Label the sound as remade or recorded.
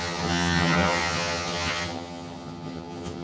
remade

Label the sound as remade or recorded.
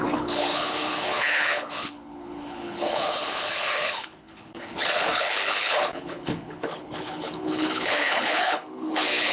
remade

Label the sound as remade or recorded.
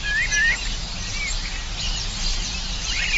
recorded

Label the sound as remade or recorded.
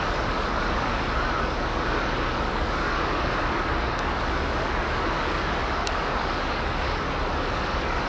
remade